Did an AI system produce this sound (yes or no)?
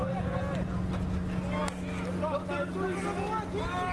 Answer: no